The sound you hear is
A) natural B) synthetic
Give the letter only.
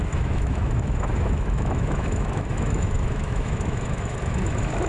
B